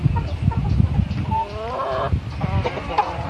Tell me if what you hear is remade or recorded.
remade